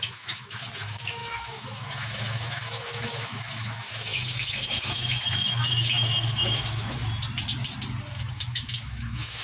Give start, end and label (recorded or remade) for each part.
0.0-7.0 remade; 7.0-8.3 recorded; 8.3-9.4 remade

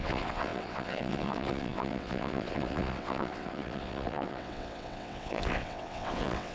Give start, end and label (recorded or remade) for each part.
0.0-6.5 remade

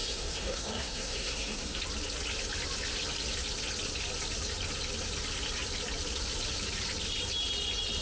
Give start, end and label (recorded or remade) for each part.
0.0-1.8 remade; 1.8-8.0 recorded